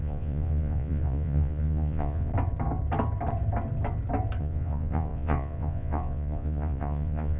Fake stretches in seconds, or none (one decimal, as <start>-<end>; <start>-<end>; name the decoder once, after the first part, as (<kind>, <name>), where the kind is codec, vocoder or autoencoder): 0.0-2.3 (vocoder, Vocos); 4.4-7.4